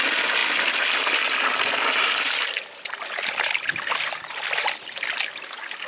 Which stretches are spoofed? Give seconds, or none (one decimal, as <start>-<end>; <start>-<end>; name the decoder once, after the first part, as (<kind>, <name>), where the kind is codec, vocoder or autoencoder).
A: none